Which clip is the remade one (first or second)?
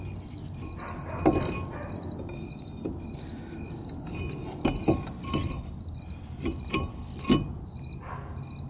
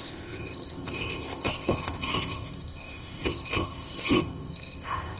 second